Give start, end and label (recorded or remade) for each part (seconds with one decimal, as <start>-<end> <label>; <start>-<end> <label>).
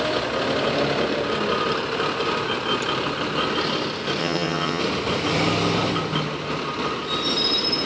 0.0-4.2 recorded; 4.2-4.8 remade; 4.8-7.9 recorded